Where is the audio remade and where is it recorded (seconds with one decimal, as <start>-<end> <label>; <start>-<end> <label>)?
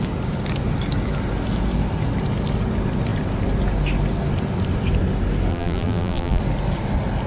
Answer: 0.0-5.5 recorded; 5.5-6.4 remade; 6.4-7.3 recorded